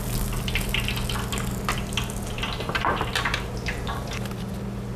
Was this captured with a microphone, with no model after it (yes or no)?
yes